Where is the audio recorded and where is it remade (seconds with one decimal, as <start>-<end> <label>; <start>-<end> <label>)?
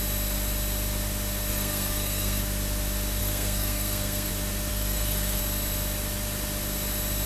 0.0-1.5 recorded; 1.5-2.4 remade; 2.4-3.2 recorded; 3.2-4.3 remade; 4.3-4.7 recorded; 4.7-5.4 remade; 5.4-7.3 recorded